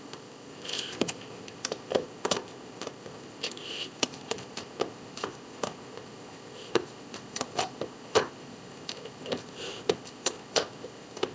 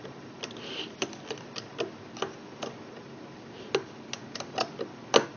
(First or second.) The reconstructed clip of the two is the first